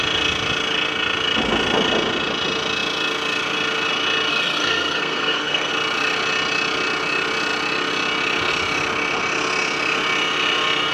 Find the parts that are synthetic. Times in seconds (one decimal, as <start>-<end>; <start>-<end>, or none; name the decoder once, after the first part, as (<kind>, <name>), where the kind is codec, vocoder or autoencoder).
4.3-5.7 (codec, SNAC)